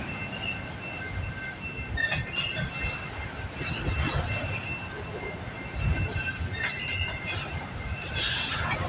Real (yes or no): yes